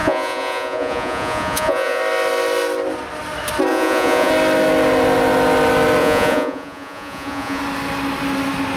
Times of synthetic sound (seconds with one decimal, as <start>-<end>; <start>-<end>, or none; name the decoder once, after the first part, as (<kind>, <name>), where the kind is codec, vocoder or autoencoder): 0.0-2.0 (vocoder, Vocos); 3.7-4.3; 6.0-7.6